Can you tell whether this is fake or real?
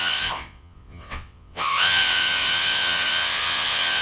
fake